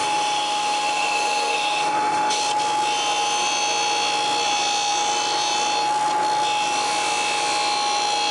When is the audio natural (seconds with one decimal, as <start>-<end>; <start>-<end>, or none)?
2.4-8.3

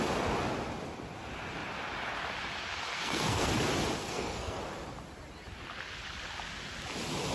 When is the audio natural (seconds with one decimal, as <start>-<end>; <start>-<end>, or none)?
0.0-2.9; 3.5-4.0; 4.6-7.3

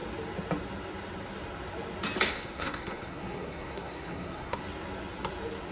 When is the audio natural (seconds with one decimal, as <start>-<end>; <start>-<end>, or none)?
0.0-2.3; 4.6-5.7